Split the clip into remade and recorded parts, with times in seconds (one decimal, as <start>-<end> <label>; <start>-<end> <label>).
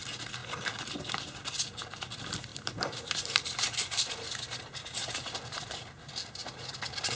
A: 0.0-2.5 recorded; 2.5-6.7 remade; 6.7-7.2 recorded